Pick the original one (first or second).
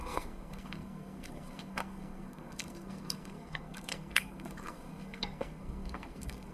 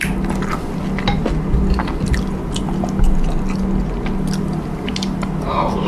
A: second